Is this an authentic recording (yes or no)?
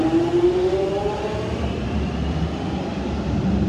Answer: yes